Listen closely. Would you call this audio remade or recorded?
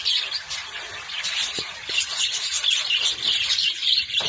recorded